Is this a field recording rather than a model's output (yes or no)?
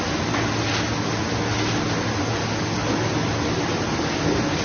yes